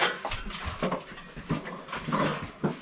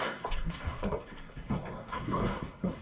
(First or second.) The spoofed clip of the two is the second